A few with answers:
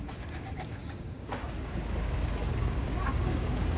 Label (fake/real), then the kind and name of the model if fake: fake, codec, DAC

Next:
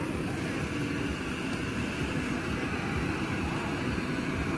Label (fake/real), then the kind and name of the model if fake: real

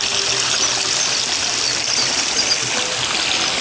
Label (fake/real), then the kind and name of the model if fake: real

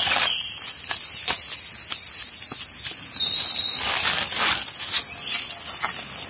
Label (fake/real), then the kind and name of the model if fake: real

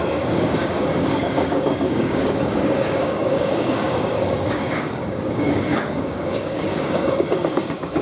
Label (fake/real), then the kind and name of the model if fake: fake, codec, DAC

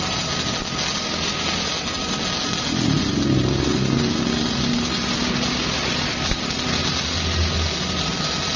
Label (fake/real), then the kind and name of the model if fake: real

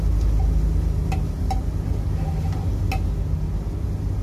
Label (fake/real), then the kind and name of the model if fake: real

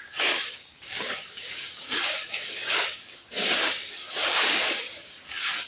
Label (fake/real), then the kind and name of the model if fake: fake, codec, DAC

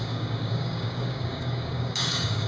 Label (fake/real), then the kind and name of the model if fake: fake, codec, DAC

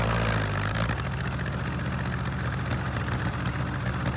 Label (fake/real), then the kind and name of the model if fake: real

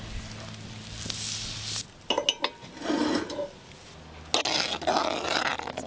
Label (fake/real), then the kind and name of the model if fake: real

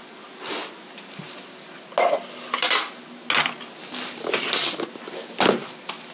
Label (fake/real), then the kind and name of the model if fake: real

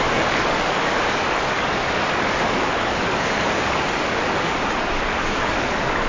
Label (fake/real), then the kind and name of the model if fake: fake, codec, DAC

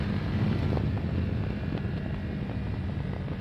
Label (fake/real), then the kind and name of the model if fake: real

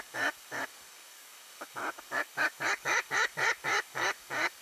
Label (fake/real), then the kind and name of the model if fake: fake, codec, DAC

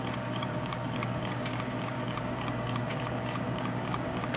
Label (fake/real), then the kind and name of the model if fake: fake, codec, DAC